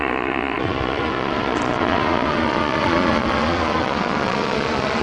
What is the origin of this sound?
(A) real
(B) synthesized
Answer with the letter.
B